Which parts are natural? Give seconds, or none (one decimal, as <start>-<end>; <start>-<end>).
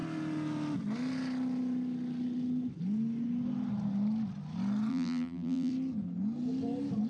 0.0-4.9; 5.7-7.1